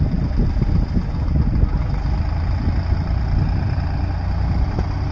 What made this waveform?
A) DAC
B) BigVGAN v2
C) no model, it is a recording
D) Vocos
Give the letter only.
C